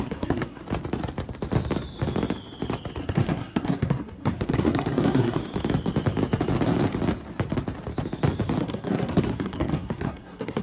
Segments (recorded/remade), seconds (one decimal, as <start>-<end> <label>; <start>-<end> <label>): 0.0-0.6 remade; 0.6-3.0 recorded; 3.0-5.4 remade; 5.4-8.6 recorded; 8.6-10.6 remade